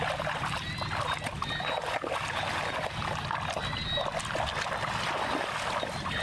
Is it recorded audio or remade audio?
recorded